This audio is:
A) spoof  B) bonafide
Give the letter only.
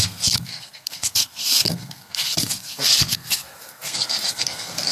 A